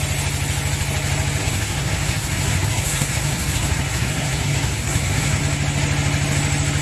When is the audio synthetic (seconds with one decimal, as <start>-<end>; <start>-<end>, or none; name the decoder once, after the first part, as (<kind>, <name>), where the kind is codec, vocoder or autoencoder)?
1.4-5.4 (codec, SNAC)